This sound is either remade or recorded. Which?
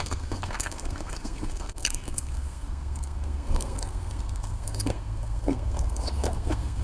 remade